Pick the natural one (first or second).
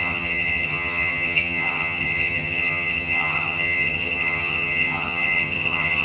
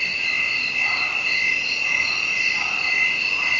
second